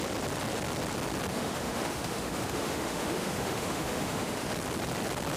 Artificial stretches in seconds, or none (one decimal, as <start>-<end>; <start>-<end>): 1.3-4.5